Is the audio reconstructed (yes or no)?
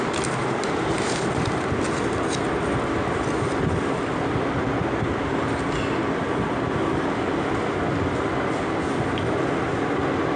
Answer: no